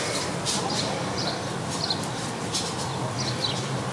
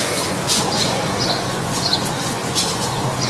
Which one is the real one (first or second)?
first